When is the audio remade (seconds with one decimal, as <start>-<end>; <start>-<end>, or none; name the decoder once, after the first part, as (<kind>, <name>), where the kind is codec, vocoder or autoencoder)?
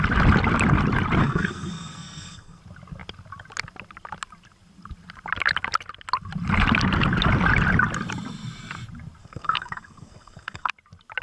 1.2-2.6 (codec, SNAC); 9.2-10.7